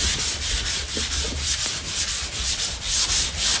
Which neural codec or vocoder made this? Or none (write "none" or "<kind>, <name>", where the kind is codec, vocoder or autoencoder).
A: vocoder, BigVGAN v2